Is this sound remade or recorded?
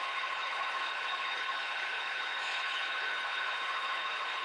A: remade